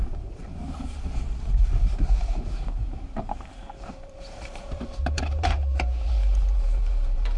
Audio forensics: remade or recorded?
remade